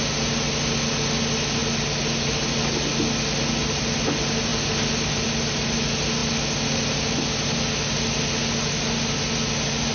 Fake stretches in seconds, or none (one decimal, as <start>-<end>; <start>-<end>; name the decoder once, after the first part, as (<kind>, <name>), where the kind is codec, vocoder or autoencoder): none